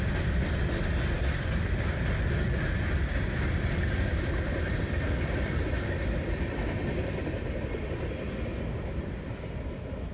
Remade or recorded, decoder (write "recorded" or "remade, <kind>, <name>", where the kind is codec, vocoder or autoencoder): recorded